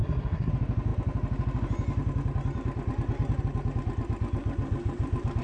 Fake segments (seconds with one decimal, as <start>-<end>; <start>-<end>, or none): 0.0-0.5